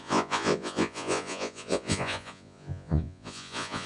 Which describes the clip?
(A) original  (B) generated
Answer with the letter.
B